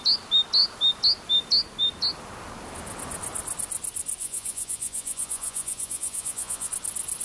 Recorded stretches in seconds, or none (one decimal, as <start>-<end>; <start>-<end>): 0.0-4.2; 6.7-7.2